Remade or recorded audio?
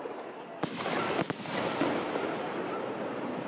recorded